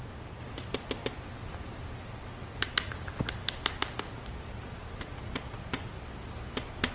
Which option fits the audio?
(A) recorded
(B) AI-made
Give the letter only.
A